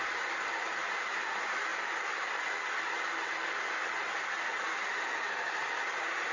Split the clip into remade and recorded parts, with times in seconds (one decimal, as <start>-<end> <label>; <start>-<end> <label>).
0.0-6.3 recorded

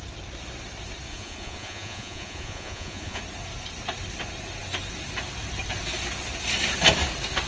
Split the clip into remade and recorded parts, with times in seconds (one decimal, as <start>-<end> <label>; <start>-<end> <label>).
0.0-1.1 recorded; 1.1-3.2 remade; 3.2-7.5 recorded

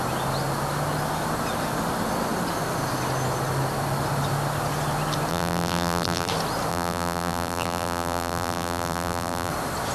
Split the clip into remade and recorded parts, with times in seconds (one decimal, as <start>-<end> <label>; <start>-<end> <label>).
0.0-5.3 recorded; 5.3-6.3 remade; 6.3-6.7 recorded; 6.7-9.5 remade; 9.5-9.9 recorded

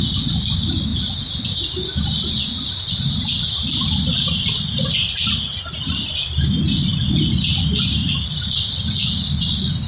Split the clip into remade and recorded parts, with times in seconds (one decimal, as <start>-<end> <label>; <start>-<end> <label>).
0.0-9.9 recorded

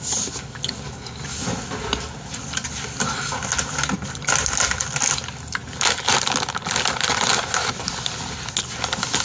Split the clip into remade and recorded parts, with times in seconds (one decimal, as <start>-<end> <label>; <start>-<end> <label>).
0.0-9.2 recorded

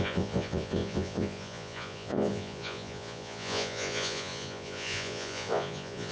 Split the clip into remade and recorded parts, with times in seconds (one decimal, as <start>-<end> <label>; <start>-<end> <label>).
0.0-6.1 remade

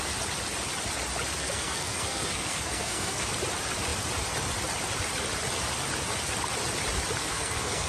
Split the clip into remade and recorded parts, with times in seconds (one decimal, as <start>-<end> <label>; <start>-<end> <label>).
0.0-1.4 recorded; 1.4-3.3 remade; 3.3-7.2 recorded; 7.2-7.9 remade

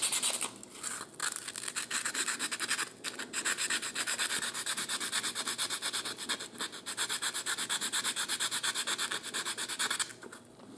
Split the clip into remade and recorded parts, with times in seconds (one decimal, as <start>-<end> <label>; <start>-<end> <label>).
0.0-10.8 recorded